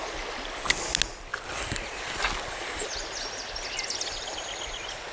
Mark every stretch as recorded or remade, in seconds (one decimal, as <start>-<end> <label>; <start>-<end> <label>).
0.0-1.3 recorded; 1.3-4.4 remade; 4.4-5.1 recorded

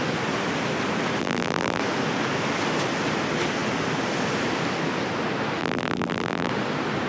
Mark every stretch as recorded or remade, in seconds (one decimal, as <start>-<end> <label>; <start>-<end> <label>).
0.0-1.2 recorded; 1.2-1.8 remade; 1.8-5.6 recorded; 5.6-6.5 remade; 6.5-7.1 recorded

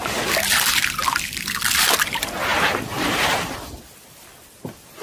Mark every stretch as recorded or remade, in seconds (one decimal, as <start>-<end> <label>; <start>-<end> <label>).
0.0-2.5 recorded; 2.5-3.7 remade; 3.7-5.0 recorded